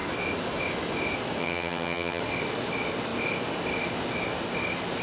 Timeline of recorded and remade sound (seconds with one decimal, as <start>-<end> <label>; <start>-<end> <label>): 0.0-1.4 recorded; 1.4-2.2 remade; 2.2-5.0 recorded